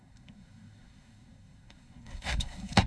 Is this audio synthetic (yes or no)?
yes